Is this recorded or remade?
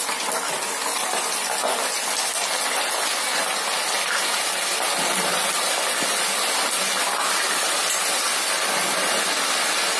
recorded